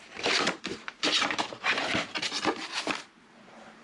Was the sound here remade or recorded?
remade